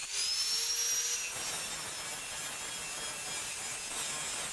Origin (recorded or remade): recorded